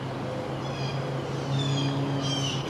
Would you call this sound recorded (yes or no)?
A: yes